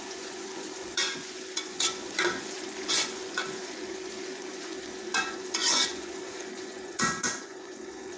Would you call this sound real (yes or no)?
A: no